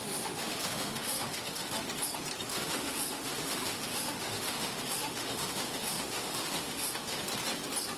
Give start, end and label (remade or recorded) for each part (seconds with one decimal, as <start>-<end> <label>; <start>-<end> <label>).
0.0-1.7 remade; 1.7-2.5 recorded; 2.5-7.2 remade; 7.2-8.0 recorded